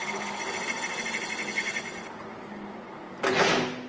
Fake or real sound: real